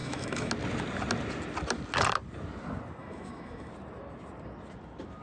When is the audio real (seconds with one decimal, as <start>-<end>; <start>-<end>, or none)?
0.5-3.0; 3.7-5.2